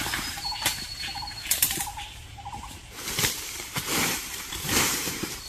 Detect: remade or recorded remade